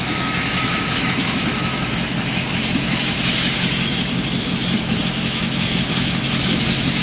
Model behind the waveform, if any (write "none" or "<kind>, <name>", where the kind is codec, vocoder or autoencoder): autoencoder, DAC-VAE